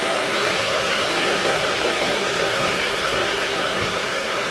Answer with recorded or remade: remade